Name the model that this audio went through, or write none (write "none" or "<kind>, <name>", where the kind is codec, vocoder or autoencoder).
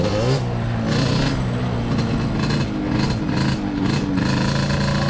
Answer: none